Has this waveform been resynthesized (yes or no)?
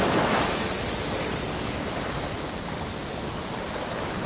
no